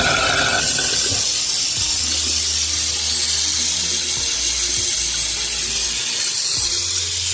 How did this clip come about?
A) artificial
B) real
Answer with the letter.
B